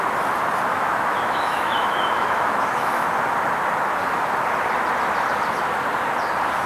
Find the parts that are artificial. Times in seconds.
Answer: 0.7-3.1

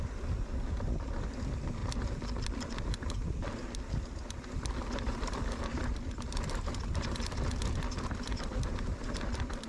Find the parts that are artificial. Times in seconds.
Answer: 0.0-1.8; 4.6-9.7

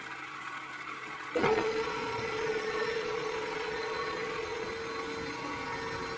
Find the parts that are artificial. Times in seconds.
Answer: 1.0-4.7

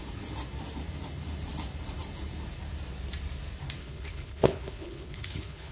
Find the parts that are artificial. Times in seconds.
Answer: 3.8-5.7

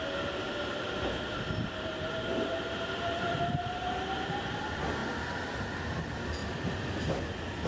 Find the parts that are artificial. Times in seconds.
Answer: 0.4-4.6; 6.4-7.3

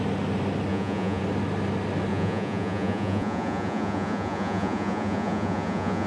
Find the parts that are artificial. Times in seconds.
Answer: 0.7-1.2; 2.1-6.1

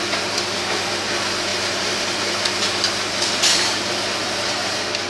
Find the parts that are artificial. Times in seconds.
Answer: 1.5-3.9

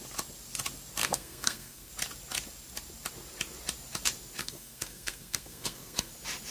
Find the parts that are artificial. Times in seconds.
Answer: 1.0-1.9; 4.4-6.1